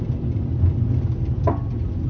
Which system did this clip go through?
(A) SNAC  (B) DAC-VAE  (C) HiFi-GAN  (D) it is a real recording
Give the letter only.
D